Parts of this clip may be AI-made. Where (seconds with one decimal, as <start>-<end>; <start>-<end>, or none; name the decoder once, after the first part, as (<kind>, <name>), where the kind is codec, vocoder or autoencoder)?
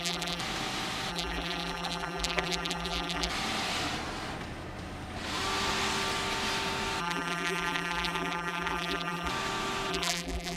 0.0-0.4 (vocoder, BigVGAN v2); 1.1-3.3; 7.0-9.3; 9.9-10.6